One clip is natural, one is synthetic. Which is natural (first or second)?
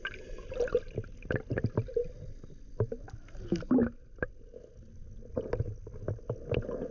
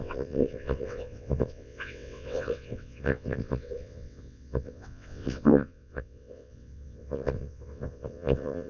first